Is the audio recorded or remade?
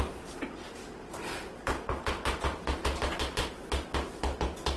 recorded